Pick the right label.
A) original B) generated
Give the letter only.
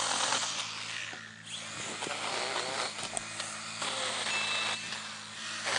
A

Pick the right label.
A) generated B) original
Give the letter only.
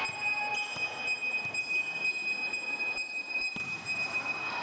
B